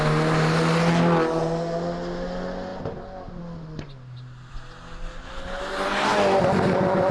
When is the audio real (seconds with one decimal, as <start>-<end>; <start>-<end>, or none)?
0.0-5.1; 5.6-7.1